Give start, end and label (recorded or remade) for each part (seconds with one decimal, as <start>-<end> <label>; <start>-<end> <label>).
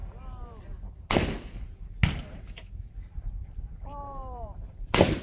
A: 0.0-0.6 remade; 0.6-3.4 recorded; 3.4-5.2 remade